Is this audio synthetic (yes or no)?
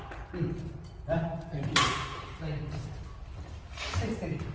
no